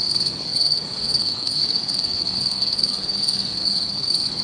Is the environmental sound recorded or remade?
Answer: remade